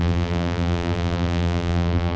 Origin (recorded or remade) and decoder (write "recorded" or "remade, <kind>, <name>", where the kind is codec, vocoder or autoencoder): remade, vocoder, BigVGAN v2